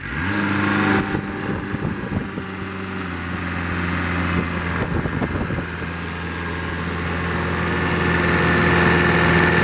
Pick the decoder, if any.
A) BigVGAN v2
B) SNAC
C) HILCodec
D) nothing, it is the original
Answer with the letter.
D